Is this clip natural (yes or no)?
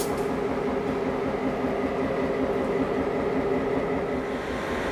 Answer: yes